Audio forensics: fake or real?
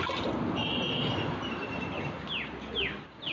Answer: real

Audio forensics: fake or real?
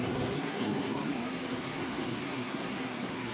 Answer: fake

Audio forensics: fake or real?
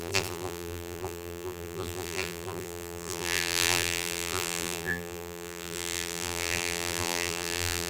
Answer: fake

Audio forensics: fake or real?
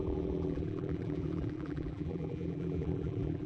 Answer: fake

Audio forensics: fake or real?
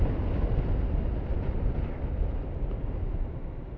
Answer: real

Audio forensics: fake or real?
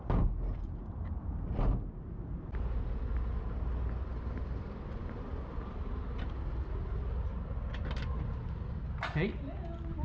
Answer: real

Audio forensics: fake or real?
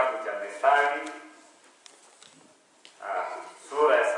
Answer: real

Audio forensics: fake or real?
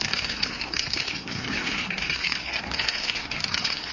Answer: fake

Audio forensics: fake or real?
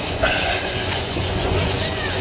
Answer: fake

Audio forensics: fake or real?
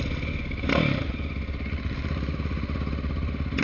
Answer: real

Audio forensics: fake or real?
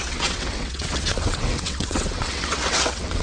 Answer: fake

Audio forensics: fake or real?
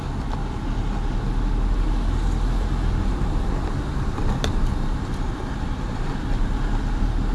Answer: real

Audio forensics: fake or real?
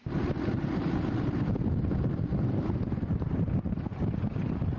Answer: real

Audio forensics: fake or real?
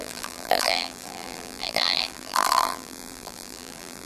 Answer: fake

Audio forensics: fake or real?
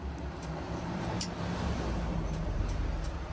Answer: fake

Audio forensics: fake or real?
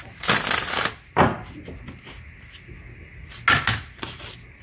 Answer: real